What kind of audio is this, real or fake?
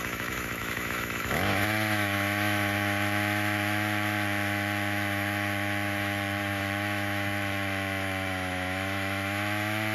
fake